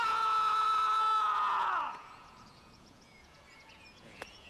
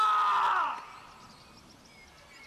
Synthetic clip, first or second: first